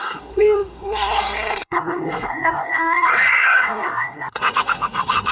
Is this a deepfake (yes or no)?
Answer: yes